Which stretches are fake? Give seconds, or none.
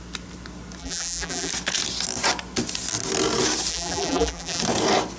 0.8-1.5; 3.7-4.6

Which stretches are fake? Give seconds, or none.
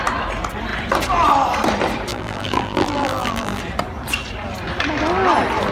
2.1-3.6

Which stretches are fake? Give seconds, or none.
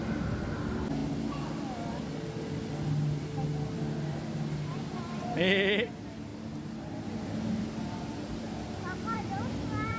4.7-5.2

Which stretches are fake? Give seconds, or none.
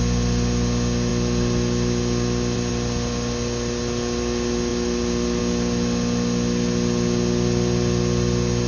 none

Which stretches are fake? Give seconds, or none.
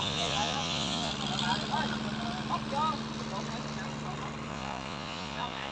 0.0-1.1; 4.5-5.7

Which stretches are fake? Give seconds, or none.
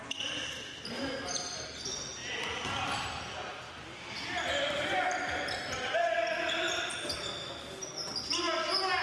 2.2-6.9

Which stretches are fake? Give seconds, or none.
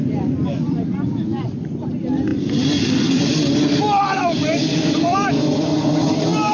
0.0-6.5